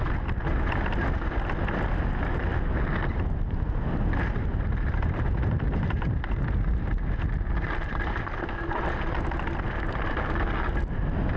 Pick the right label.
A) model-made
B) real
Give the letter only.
B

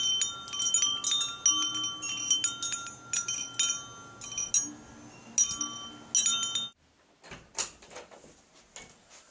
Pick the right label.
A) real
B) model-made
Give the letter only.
A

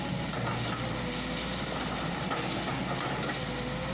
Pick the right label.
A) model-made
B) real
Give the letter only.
B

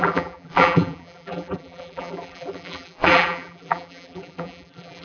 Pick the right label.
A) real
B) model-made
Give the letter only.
B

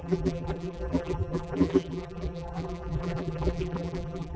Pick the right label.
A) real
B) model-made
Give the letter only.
B